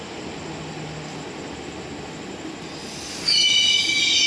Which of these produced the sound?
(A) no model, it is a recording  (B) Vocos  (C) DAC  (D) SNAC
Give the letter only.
A